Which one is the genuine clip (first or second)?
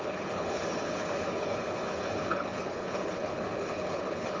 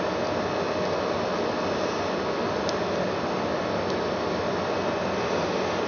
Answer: second